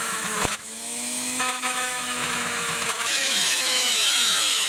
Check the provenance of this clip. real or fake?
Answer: fake